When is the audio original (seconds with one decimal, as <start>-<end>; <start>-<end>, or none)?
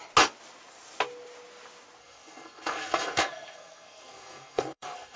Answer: 0.0-2.0